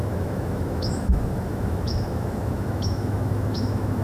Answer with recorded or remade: remade